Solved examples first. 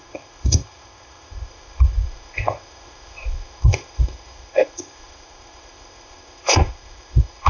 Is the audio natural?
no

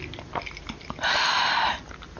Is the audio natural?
yes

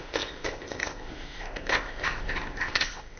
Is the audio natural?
no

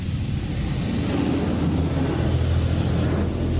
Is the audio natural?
yes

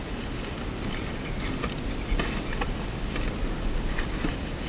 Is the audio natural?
yes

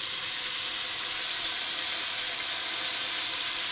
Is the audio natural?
yes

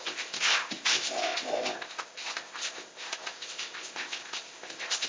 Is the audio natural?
no